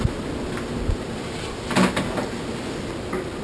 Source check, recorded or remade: recorded